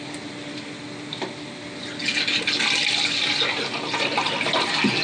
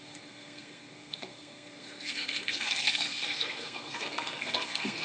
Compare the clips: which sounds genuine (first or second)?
first